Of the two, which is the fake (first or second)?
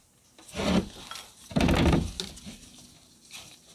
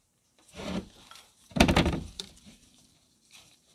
second